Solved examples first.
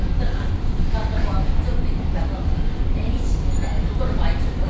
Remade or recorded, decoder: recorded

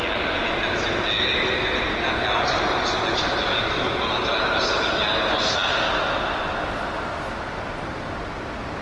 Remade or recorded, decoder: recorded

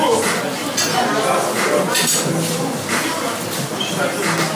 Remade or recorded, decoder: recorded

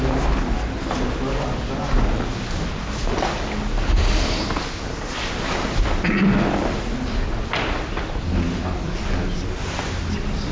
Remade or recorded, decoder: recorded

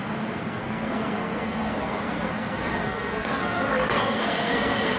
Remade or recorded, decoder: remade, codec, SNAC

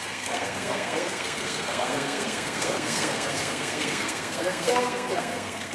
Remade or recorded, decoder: remade, codec, SNAC